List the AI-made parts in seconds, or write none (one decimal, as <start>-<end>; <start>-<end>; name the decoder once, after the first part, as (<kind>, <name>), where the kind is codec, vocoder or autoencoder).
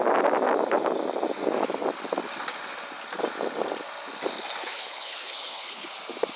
4.6-5.9 (codec, HILCodec)